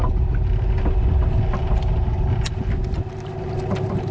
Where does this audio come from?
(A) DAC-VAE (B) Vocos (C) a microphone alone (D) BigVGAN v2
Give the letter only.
C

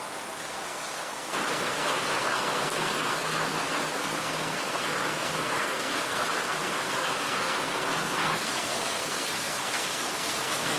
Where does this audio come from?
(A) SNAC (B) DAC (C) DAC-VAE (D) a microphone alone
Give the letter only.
A